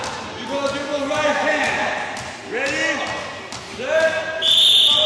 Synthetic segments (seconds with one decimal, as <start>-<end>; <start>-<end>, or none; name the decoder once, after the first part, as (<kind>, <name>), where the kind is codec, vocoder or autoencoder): none